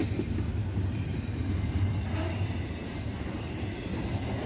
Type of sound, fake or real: real